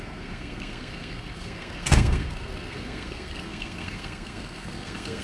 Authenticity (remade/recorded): remade